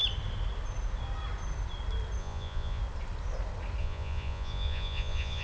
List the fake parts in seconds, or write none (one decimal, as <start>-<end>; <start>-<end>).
2.2-2.8; 3.8-5.4